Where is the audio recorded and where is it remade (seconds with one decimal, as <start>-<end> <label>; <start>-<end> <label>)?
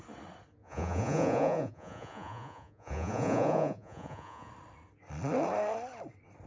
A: 0.0-0.6 recorded; 0.6-4.5 remade; 4.5-6.5 recorded